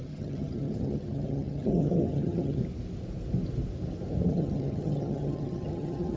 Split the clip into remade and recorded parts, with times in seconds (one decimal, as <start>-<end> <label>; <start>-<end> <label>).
0.0-2.6 remade; 2.6-4.3 recorded; 4.3-6.2 remade